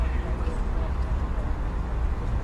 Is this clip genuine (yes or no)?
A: yes